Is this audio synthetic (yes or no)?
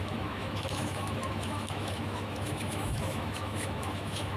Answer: yes